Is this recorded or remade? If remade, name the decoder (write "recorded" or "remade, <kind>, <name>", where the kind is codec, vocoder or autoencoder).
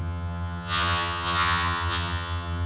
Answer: remade, vocoder, HiFi-GAN